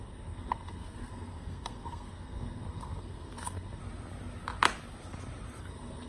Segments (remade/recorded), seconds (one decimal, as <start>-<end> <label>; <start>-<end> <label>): 0.0-3.8 remade; 3.8-5.6 recorded; 5.6-6.1 remade